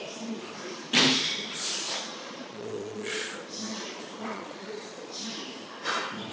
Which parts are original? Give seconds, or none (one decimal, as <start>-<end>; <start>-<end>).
0.0-2.1; 3.3-3.7; 5.2-6.3